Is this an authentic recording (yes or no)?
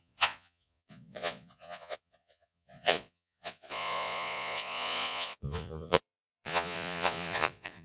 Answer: no